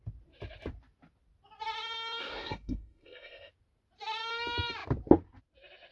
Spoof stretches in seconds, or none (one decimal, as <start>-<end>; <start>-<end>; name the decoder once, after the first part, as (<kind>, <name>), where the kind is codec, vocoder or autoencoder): 2.2-3.5 (codec, SNAC)